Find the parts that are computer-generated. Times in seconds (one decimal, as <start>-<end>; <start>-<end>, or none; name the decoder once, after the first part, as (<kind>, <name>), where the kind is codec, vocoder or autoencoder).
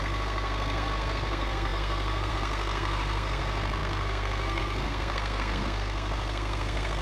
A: 0.0-7.0 (codec, SNAC)